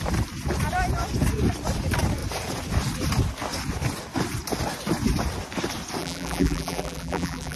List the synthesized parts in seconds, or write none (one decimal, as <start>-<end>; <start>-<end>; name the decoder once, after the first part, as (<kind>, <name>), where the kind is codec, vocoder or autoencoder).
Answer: 6.0-7.6 (vocoder, BigVGAN v2)